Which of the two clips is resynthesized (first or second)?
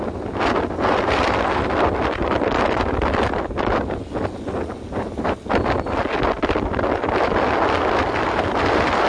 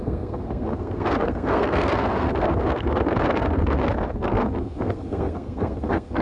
second